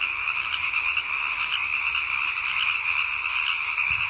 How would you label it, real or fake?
real